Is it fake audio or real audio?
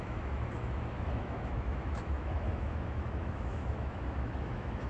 fake